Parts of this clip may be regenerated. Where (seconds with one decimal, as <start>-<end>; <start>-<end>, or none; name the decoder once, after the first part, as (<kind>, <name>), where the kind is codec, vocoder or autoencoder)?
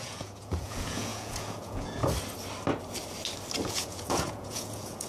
0.0-2.0 (vocoder, Vocos); 3.7-5.1